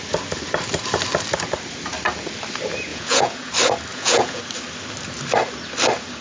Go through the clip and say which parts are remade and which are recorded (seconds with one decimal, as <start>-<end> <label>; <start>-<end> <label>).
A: 0.0-2.9 recorded; 2.9-3.5 remade; 3.5-3.9 recorded; 3.9-4.4 remade; 4.4-6.2 recorded